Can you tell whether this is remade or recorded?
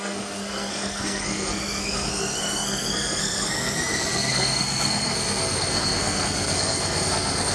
remade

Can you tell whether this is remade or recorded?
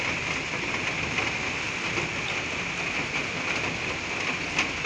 recorded